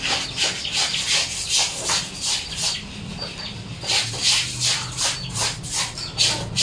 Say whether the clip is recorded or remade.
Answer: recorded